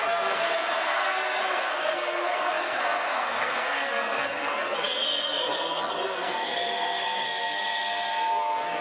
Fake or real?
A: fake